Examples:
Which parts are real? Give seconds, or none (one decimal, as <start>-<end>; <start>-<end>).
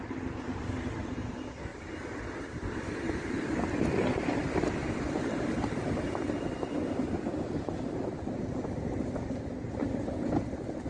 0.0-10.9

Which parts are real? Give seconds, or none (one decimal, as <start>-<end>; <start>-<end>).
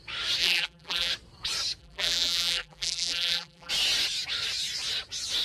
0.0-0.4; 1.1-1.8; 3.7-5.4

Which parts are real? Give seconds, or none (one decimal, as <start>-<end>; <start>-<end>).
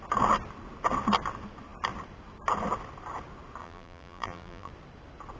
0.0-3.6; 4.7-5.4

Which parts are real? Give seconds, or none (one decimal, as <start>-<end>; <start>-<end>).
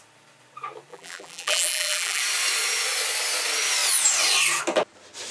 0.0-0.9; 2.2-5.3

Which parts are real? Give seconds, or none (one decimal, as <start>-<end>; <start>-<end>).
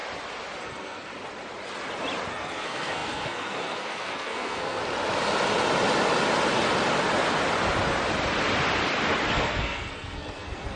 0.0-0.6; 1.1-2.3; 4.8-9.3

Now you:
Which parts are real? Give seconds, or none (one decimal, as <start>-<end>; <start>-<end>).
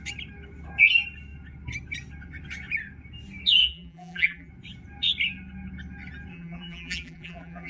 0.0-3.6; 4.5-6.3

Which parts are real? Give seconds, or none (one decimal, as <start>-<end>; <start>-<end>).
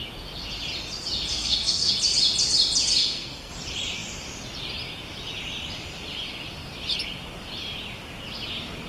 0.0-1.3; 1.9-3.0; 3.5-8.9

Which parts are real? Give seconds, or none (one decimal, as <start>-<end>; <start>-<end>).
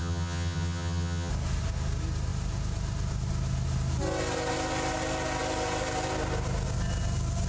1.3-7.5